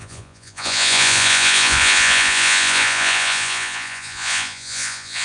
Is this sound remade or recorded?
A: remade